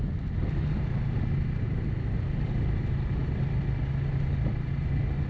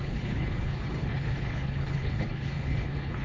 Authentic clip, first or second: first